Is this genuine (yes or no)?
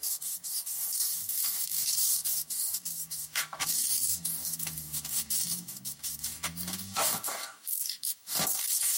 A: no